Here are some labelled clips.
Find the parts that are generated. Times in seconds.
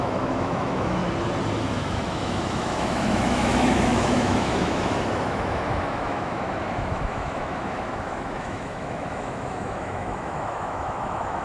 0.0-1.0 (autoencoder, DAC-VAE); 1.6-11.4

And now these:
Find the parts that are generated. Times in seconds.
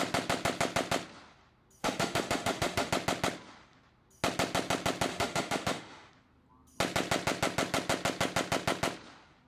1.8-2.9 (autoencoder, DAC-VAE); 5.1-6.1